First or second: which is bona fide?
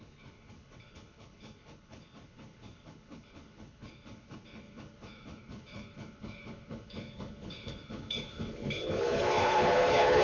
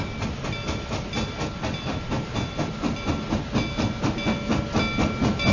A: second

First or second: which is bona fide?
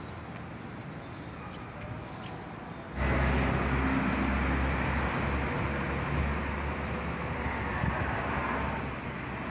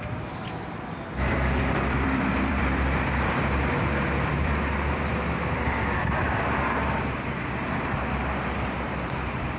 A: first